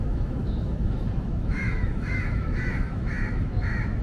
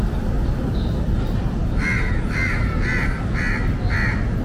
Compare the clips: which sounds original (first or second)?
second